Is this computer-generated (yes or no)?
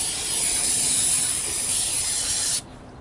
no